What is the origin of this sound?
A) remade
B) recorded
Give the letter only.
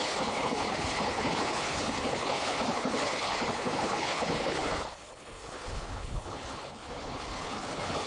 A